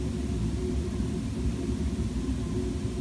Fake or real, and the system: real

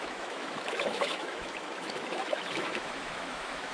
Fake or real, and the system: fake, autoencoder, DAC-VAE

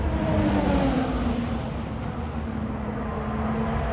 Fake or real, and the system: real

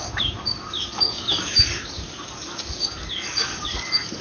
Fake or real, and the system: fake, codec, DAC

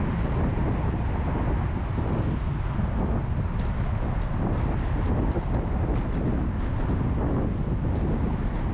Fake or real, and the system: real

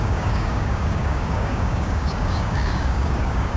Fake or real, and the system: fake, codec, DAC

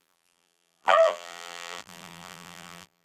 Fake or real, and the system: fake, vocoder, BigVGAN v2